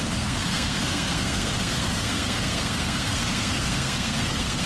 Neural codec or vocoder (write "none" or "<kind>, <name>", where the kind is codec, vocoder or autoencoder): codec, SNAC